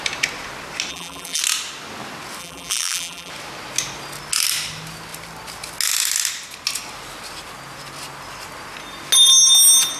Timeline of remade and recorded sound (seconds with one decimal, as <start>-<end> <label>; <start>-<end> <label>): 0.0-0.9 recorded; 0.9-1.4 remade; 1.4-2.4 recorded; 2.4-3.3 remade; 3.3-10.0 recorded